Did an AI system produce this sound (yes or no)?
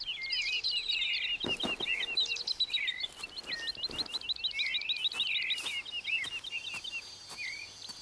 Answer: no